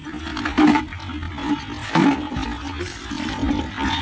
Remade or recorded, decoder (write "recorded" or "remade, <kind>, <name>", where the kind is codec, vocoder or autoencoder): recorded